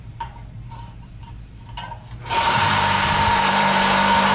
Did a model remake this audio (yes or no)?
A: yes